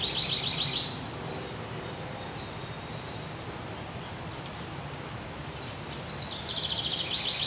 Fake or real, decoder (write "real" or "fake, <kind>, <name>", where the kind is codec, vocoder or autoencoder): real